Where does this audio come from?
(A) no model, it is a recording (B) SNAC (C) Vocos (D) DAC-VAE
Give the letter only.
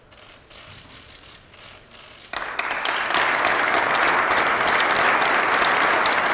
A